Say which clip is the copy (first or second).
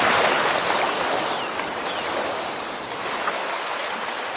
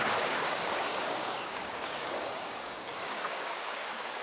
second